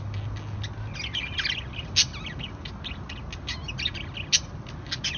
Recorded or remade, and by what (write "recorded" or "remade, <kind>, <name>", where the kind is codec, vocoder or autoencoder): recorded